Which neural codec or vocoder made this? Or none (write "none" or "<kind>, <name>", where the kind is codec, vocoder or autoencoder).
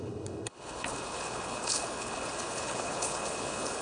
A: codec, HILCodec